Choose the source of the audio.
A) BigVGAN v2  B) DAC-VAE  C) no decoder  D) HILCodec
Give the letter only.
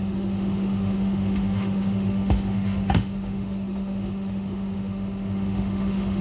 B